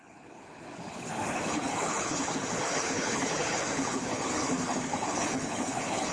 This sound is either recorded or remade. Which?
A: remade